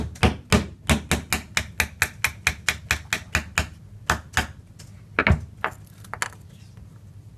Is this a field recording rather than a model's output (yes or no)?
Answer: yes